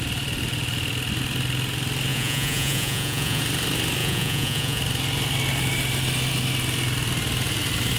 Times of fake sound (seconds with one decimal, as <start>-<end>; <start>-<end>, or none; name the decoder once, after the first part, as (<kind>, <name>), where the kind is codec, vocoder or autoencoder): 2.1-3.4 (vocoder, Vocos); 4.0-4.8